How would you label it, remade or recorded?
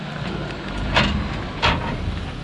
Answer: recorded